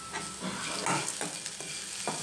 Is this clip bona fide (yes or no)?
yes